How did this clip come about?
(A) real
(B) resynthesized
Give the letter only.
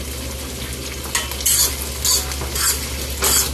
A